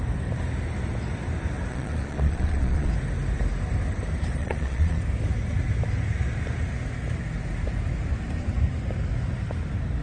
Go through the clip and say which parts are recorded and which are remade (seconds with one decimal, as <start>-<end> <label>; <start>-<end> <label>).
0.0-1.7 recorded; 1.7-2.9 remade; 2.9-4.4 recorded; 4.4-5.0 remade; 5.0-10.0 recorded